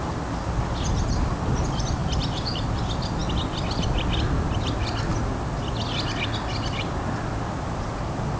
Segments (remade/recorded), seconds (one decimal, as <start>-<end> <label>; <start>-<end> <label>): 0.0-8.4 recorded